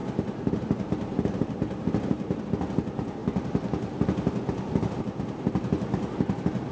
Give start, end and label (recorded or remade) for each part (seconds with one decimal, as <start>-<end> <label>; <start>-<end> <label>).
0.0-2.4 remade; 2.4-6.7 recorded